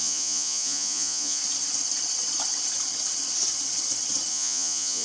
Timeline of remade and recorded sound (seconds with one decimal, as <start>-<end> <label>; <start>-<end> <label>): 0.0-1.4 remade; 1.4-4.3 recorded; 4.3-5.0 remade